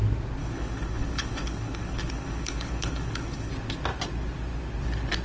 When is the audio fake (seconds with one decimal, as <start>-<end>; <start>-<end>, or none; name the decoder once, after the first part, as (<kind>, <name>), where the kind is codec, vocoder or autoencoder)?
0.4-3.5 (codec, HILCodec)